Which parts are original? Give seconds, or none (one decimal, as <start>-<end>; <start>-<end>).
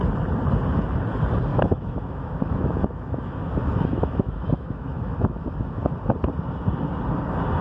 0.0-1.5; 5.9-7.6